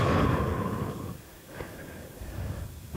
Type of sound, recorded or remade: remade